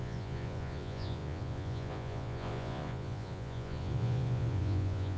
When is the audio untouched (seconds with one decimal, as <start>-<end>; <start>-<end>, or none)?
none